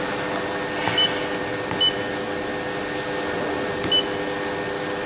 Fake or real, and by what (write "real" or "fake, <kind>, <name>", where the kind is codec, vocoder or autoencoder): real